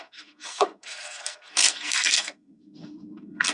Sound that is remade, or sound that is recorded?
remade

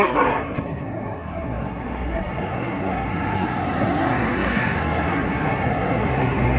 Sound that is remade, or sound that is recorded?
remade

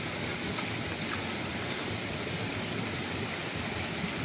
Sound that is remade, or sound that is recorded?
recorded